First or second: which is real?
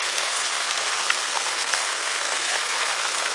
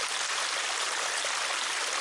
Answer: second